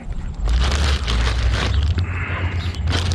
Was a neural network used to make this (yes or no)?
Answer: no